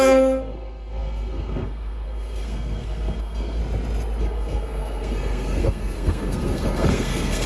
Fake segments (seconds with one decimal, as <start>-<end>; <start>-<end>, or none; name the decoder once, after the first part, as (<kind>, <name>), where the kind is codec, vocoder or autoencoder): 0.0-3.6 (codec, SNAC); 4.2-7.5